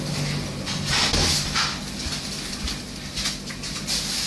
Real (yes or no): yes